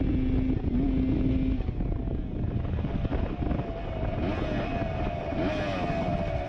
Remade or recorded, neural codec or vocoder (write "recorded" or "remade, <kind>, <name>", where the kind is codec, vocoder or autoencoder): recorded